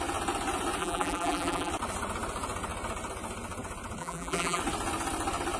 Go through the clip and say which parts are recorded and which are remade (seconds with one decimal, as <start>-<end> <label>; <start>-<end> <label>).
0.0-0.8 recorded; 0.8-1.7 remade; 1.7-4.0 recorded; 4.0-4.6 remade; 4.6-5.6 recorded